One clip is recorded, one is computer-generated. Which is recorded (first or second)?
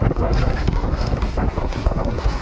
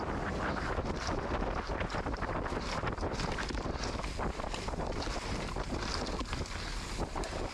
second